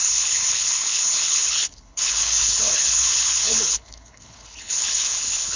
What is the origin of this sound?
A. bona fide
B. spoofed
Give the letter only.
B